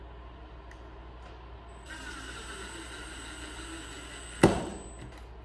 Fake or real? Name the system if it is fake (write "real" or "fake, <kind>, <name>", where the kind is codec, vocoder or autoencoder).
real